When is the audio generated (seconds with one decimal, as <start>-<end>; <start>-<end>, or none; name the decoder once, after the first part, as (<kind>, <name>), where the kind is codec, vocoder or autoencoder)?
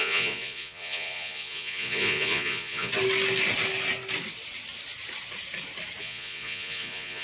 0.0-2.9 (vocoder, Vocos); 6.0-7.2